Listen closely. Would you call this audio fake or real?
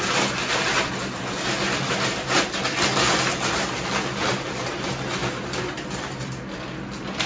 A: real